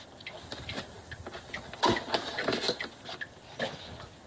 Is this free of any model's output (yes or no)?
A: yes